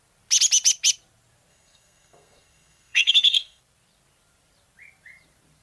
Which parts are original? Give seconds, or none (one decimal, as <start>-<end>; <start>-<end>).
0.0-1.5; 3.6-5.6